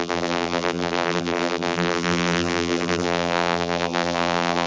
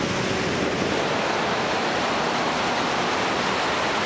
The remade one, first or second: first